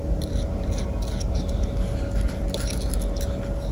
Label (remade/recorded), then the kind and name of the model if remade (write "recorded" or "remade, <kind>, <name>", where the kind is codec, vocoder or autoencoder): recorded